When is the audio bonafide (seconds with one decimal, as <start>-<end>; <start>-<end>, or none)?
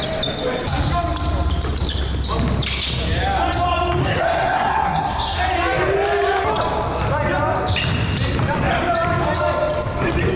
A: 0.0-4.0; 5.4-10.4